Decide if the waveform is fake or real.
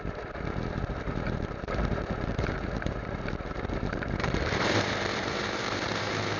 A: fake